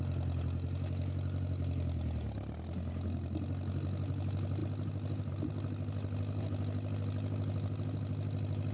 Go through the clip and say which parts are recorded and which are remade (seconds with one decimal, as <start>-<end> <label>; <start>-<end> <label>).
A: 0.0-8.7 recorded